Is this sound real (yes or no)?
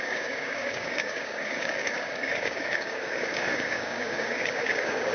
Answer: no